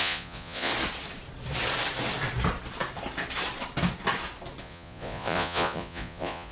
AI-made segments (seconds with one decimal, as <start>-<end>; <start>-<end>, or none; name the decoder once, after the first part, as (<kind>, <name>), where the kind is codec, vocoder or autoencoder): 0.0-0.7 (vocoder, Vocos); 4.6-6.5